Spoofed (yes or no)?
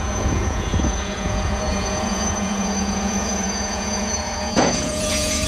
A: yes